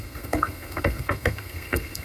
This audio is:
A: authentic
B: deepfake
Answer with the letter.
B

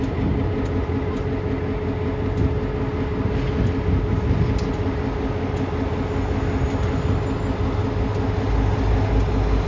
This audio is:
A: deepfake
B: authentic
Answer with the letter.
B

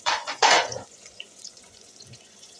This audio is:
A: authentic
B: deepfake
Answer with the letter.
B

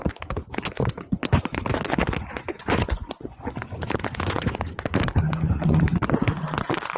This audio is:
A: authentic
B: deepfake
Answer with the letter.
B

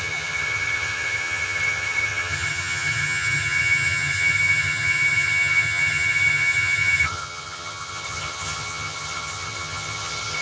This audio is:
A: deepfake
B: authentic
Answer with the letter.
A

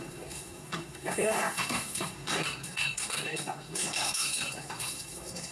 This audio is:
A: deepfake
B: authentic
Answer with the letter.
A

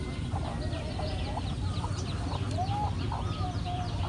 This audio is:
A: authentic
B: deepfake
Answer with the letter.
A